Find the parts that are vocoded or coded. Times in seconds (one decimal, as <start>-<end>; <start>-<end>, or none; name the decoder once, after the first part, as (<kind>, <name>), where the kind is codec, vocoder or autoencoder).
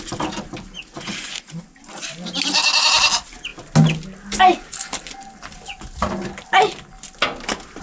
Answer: 0.9-1.6 (vocoder, Vocos)